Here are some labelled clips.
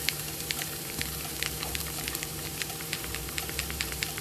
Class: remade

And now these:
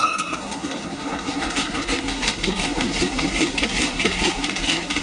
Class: remade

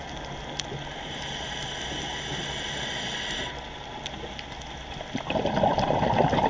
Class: recorded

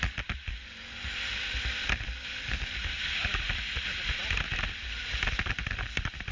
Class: recorded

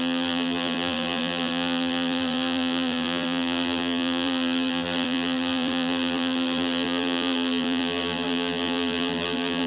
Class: remade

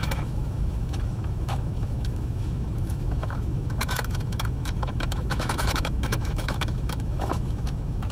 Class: remade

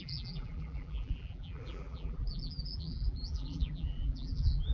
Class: remade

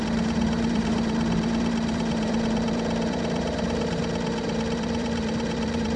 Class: remade